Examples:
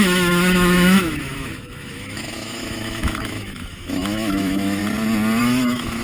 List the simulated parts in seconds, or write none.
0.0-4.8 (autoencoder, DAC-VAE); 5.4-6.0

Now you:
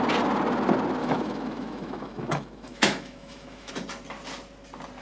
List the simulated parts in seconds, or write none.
1.0-3.7 (autoencoder, DAC-VAE)

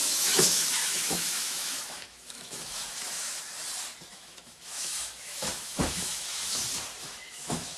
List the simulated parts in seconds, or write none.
0.0-3.4 (autoencoder, DAC-VAE); 4.1-6.6; 7.0-7.8

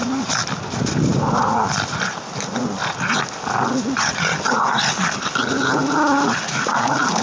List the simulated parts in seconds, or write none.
none